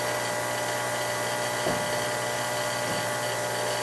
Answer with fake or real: real